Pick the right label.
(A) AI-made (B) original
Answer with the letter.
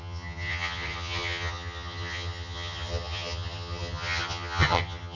A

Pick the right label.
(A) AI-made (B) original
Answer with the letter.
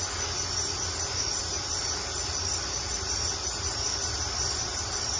B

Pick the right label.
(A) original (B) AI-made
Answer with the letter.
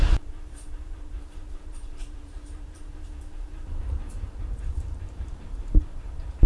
B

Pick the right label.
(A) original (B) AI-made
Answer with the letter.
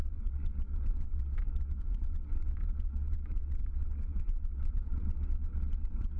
B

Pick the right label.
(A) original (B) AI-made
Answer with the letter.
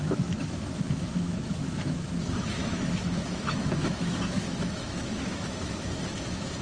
B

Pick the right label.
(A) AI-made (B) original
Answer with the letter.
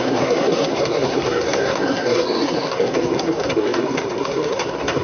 A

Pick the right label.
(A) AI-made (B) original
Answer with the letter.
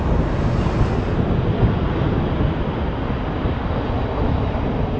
B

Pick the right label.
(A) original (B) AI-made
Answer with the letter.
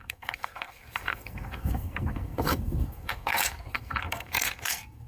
B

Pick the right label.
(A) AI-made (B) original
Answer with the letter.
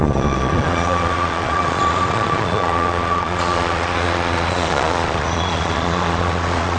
A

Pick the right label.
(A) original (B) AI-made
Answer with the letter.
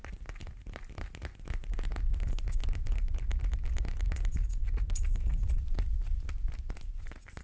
A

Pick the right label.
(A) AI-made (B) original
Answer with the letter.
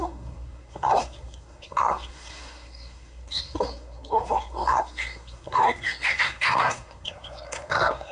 A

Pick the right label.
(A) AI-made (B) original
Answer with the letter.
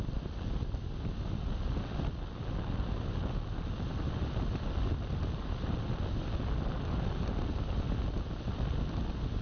B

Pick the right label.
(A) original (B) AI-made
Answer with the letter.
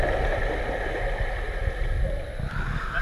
A